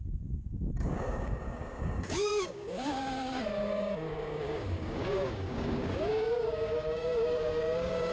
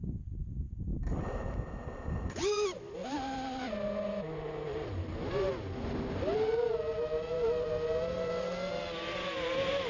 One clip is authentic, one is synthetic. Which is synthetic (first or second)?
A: first